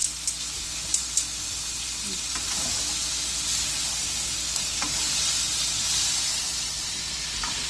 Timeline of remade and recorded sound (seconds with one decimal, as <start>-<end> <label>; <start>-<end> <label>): 0.0-7.7 recorded